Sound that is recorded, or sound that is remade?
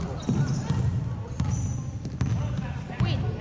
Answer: recorded